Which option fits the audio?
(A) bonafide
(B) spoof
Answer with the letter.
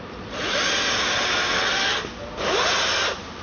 A